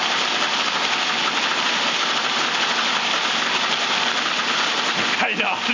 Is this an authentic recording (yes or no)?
yes